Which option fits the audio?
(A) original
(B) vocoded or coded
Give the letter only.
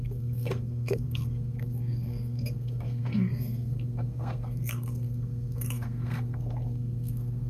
B